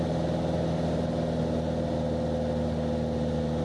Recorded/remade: recorded